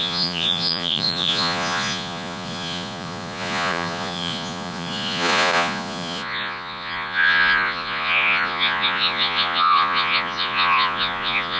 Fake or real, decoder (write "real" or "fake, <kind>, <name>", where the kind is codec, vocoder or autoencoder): fake, vocoder, Vocos